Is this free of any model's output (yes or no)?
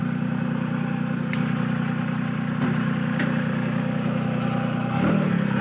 yes